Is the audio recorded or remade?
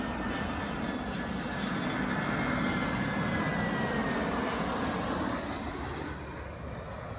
recorded